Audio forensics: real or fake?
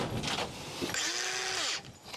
real